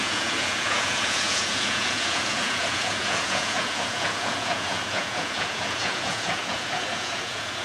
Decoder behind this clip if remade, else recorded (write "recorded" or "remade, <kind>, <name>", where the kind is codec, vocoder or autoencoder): remade, vocoder, Vocos